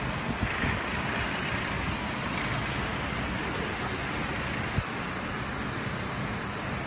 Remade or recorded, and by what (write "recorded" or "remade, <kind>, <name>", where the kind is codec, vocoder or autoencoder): recorded